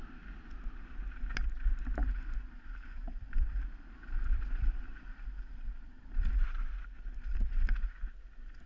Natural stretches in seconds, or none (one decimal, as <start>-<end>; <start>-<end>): 0.0-2.0; 6.4-7.2; 7.9-8.7